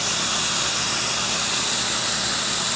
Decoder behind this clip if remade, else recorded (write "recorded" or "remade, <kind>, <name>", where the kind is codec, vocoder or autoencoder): recorded